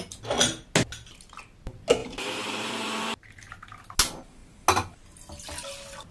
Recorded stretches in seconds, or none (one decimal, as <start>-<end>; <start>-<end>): 0.0-2.0; 3.5-6.1